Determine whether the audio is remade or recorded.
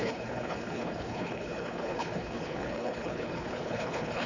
remade